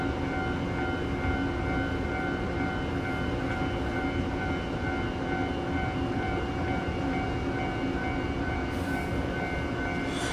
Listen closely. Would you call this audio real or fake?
real